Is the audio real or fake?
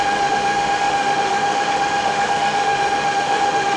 fake